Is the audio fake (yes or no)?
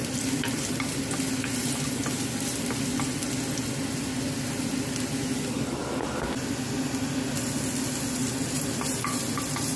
no